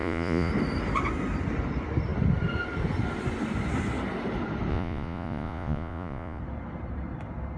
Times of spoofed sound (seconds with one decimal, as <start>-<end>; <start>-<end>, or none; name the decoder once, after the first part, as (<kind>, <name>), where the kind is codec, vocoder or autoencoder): 0.0-0.5 (vocoder, Vocos); 4.7-6.4